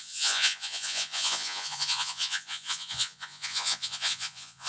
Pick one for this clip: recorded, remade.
remade